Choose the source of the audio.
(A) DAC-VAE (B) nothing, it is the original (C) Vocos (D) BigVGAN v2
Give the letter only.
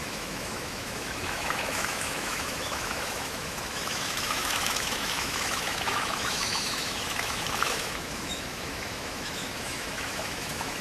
A